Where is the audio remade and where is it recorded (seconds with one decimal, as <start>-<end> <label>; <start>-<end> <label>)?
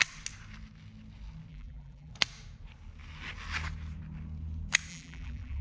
0.0-1.5 recorded; 1.5-2.1 remade; 2.1-4.9 recorded; 4.9-5.6 remade